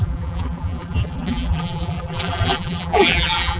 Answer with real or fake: fake